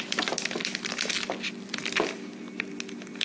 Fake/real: real